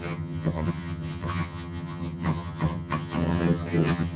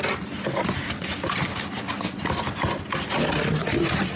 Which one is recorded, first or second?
second